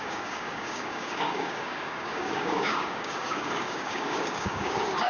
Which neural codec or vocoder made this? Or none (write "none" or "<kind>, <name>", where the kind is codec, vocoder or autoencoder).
codec, DAC